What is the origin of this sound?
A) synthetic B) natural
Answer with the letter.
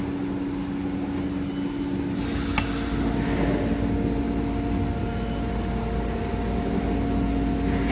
B